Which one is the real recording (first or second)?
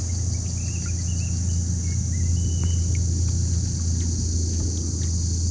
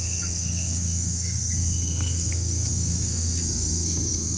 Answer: first